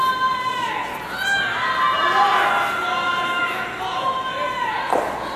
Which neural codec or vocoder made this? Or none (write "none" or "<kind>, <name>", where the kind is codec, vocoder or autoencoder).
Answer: none